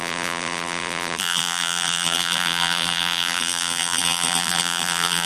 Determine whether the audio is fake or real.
fake